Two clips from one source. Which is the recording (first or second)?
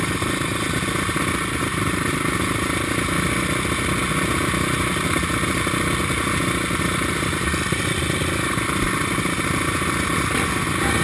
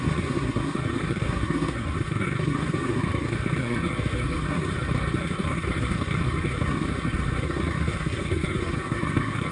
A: first